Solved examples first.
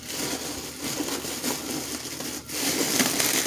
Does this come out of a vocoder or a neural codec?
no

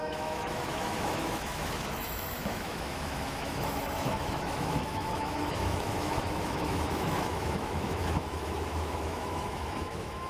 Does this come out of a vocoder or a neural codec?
yes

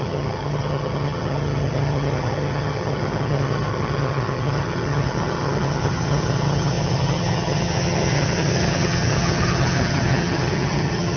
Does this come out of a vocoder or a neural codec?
yes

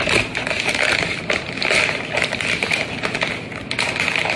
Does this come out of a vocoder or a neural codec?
yes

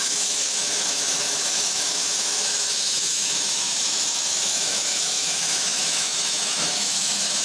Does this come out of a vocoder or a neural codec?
yes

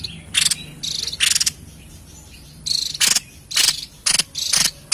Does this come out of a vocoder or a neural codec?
no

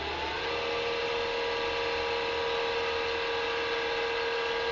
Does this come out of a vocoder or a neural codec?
no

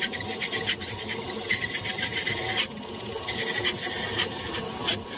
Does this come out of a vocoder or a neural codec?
no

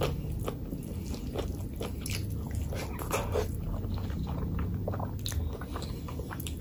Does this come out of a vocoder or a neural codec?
no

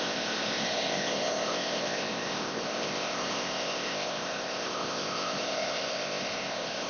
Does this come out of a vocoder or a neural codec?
yes